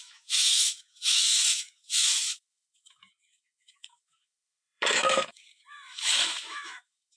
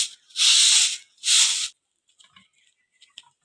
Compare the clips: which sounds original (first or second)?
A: second